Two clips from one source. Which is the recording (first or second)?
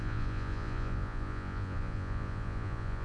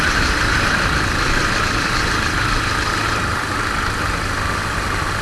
second